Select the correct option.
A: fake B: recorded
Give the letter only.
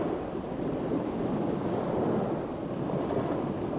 B